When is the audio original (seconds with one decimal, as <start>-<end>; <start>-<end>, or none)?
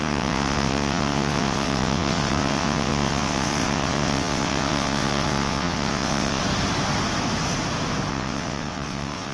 6.4-8.1